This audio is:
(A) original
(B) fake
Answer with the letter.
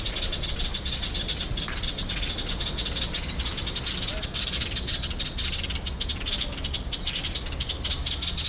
A